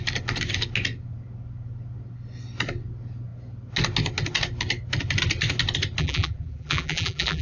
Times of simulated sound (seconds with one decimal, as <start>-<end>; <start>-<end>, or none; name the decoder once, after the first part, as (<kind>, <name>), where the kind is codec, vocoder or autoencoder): 6.0-7.4 (vocoder, BigVGAN v2)

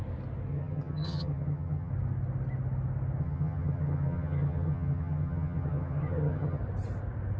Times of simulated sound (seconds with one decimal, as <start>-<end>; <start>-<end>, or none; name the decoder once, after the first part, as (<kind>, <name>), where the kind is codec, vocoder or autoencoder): 0.5-1.9 (vocoder, HiFi-GAN); 3.2-6.6

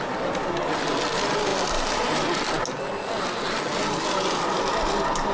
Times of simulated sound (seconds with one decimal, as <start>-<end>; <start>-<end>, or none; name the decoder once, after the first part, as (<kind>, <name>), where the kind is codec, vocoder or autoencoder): none

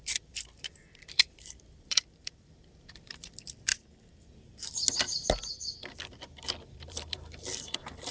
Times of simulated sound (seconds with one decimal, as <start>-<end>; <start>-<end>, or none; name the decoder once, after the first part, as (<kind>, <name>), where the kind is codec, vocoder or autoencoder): 0.0-3.7 (vocoder, BigVGAN v2); 6.0-8.1